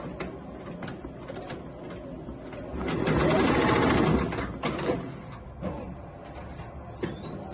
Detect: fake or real real